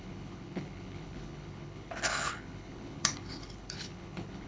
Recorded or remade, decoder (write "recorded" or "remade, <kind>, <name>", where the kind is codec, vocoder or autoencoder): remade, codec, HILCodec